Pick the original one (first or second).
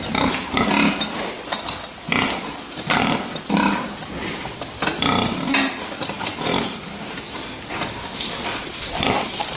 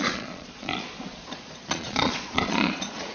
first